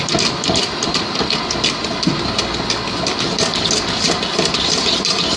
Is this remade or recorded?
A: recorded